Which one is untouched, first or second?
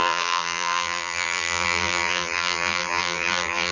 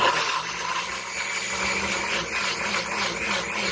second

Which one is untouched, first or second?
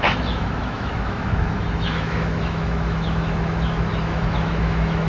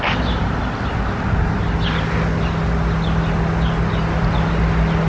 second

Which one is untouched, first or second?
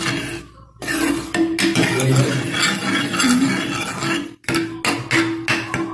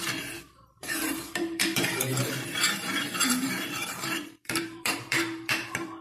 first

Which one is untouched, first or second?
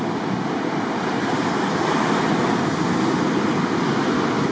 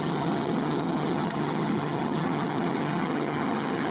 first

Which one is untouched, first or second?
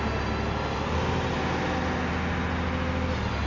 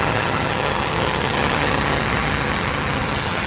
first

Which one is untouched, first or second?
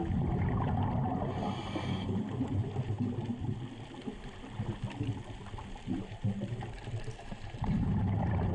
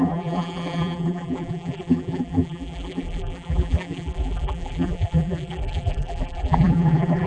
first